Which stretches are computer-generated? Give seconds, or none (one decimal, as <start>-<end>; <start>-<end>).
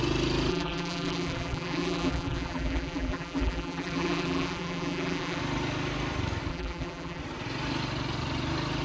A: 0.5-5.4; 6.5-7.2